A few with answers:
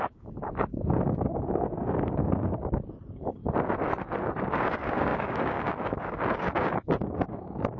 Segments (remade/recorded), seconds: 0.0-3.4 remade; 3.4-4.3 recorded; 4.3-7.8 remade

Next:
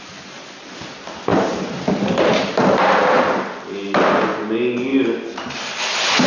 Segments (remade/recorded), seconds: 0.0-1.3 recorded; 1.3-3.2 remade; 3.2-6.3 recorded

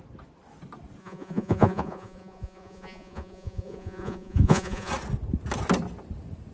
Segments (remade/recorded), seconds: 0.0-1.0 recorded; 1.0-4.9 remade; 4.9-6.5 recorded